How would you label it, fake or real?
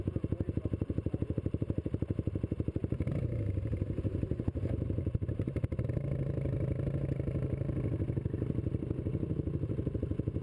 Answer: fake